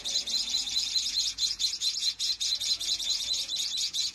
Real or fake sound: fake